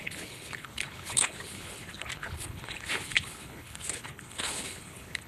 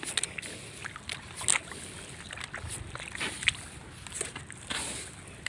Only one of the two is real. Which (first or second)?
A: second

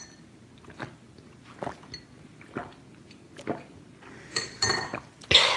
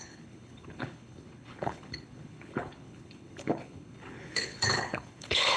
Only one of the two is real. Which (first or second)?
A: first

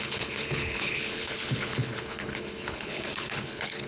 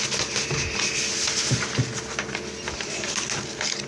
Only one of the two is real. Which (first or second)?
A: second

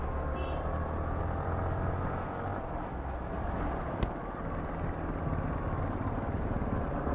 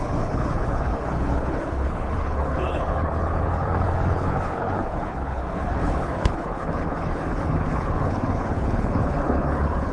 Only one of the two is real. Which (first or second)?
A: first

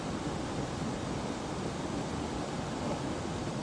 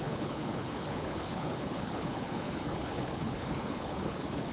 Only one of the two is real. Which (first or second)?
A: first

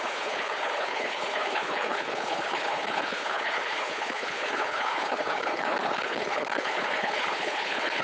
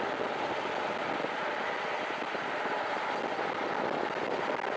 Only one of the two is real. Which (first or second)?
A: second